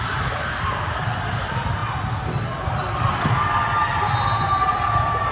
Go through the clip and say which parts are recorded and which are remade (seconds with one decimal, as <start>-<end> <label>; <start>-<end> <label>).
0.0-1.8 remade; 1.8-5.3 recorded